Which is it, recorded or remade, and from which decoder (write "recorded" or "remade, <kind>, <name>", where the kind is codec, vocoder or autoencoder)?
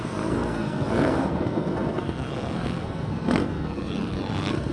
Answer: remade, codec, SNAC